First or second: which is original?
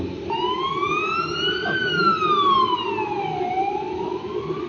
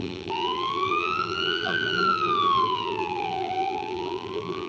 first